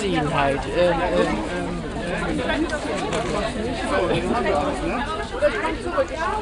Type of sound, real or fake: real